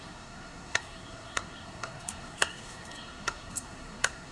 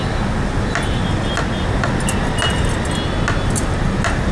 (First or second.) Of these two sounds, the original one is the second